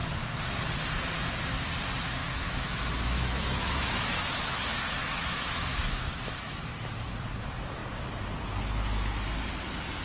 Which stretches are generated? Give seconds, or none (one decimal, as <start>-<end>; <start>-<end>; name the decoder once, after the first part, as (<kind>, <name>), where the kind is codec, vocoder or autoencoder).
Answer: 2.2-6.9 (autoencoder, DAC-VAE)